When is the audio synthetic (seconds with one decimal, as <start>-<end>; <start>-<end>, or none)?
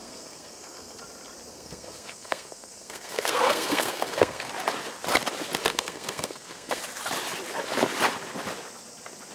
0.0-1.0; 1.5-4.5; 5.7-6.8